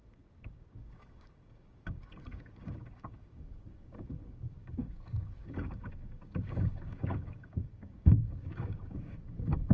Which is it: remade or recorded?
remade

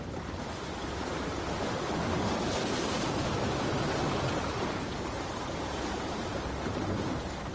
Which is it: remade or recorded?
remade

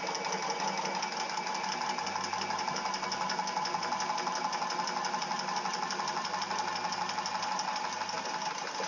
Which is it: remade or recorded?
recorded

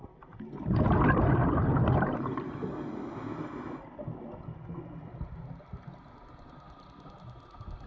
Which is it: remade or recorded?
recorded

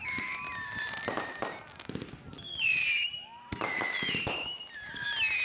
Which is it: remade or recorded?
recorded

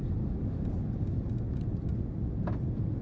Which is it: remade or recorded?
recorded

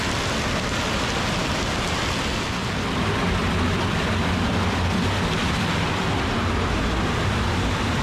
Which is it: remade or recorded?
recorded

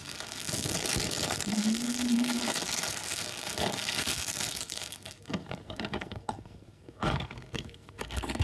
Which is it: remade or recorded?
remade